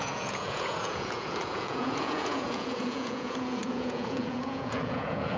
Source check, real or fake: fake